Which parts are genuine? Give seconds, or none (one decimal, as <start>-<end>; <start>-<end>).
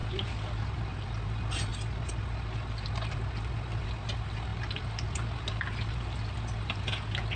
0.0-1.7; 3.1-4.5; 5.4-7.4